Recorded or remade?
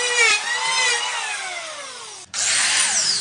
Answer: recorded